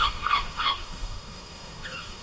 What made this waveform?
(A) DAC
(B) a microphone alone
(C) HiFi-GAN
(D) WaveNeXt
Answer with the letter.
A